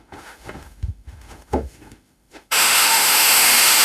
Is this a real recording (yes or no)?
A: no